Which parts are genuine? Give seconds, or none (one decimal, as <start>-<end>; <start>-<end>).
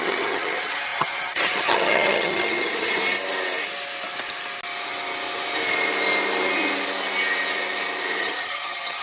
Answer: 3.0-8.2